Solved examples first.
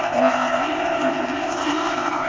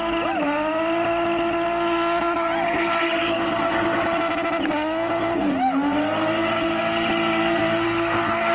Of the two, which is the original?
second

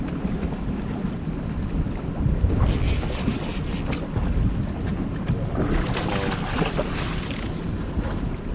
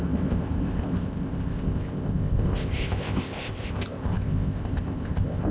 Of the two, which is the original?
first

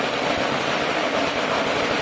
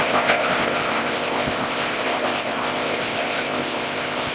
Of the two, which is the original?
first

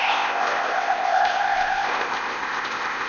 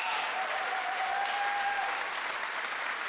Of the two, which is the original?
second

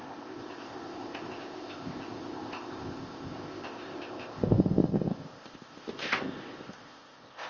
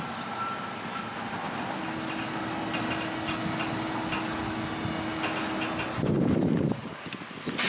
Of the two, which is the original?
second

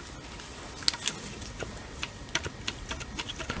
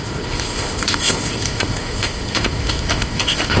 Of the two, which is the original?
first